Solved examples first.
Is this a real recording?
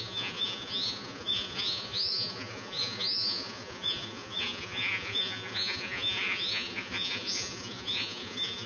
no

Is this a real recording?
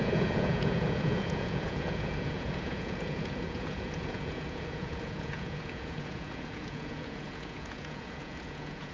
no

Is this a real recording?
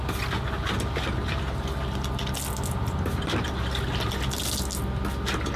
yes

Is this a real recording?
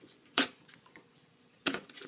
no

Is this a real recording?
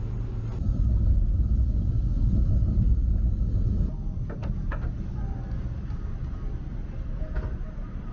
yes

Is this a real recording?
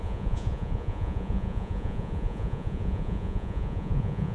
no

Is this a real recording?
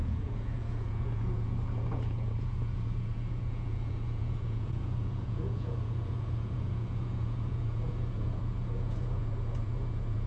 no